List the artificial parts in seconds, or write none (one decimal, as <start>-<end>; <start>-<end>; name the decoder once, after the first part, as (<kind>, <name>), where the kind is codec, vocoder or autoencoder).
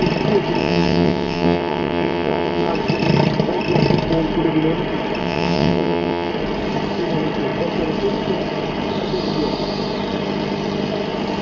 0.6-2.7 (vocoder, WaveNeXt); 5.2-6.3